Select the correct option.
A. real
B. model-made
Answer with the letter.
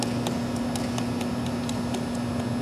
A